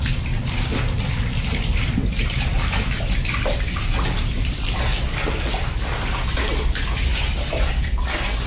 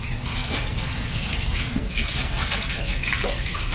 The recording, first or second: first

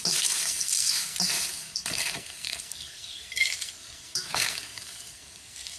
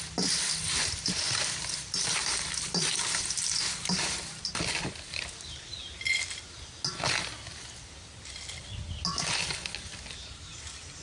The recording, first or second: second